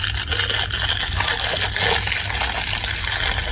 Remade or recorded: recorded